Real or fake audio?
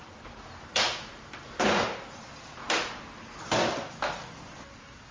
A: real